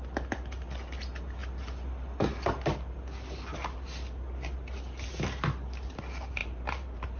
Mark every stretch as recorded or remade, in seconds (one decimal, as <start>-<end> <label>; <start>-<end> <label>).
0.0-6.4 recorded; 6.4-7.2 remade